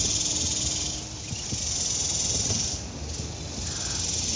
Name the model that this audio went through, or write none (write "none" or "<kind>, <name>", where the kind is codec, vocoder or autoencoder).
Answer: none